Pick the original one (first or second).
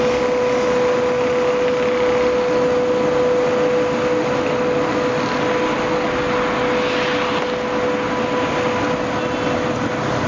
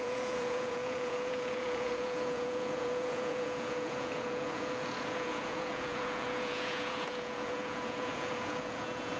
first